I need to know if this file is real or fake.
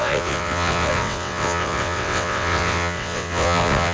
fake